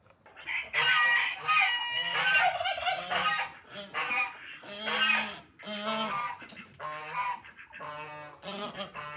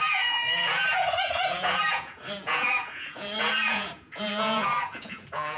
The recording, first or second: first